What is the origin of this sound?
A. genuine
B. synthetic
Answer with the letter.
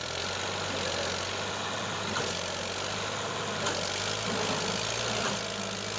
A